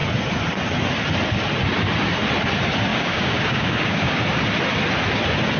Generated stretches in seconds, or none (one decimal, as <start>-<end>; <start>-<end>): 2.9-4.1